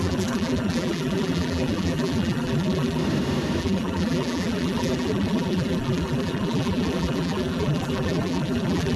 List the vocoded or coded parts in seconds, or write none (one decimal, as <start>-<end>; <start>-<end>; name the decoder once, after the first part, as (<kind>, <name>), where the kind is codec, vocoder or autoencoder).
0.0-3.0 (vocoder, BigVGAN v2); 3.6-9.0